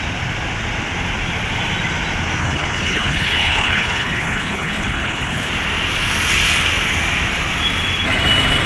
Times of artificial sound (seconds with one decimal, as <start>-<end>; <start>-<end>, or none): 2.4-5.5

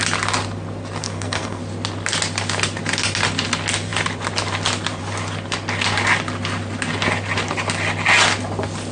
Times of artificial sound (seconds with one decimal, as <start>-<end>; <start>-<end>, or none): 1.0-1.6

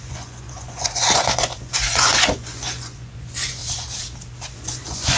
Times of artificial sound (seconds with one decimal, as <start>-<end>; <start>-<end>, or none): 0.0-3.6; 4.5-5.2

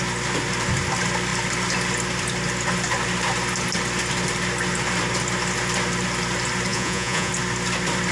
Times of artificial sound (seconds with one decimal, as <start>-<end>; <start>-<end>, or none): 6.7-7.3